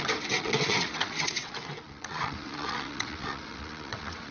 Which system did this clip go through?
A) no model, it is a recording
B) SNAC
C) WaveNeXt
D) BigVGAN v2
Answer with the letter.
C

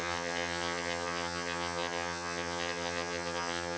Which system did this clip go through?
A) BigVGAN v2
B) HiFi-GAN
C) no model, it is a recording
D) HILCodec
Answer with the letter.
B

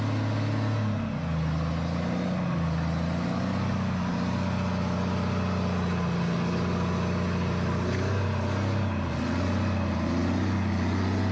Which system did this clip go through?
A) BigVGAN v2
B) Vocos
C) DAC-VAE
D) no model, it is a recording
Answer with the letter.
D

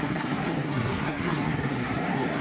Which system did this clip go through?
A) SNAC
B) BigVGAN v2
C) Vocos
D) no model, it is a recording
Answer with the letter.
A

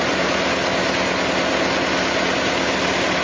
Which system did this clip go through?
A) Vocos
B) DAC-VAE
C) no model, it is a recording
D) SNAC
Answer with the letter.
C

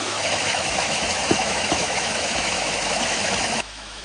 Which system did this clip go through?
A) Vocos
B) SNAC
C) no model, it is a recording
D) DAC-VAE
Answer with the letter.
D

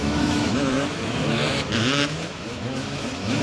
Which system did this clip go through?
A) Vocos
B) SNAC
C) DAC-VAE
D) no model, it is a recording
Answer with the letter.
C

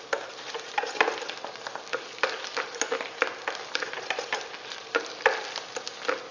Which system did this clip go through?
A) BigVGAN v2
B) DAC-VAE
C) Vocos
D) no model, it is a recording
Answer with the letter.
D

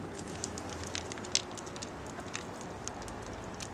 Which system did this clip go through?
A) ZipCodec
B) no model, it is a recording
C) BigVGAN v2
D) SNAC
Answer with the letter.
B